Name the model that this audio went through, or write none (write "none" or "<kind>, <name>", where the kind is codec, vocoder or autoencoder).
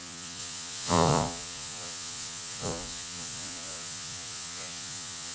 vocoder, Vocos